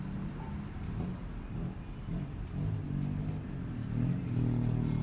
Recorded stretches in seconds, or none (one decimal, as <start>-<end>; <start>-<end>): 0.0-5.0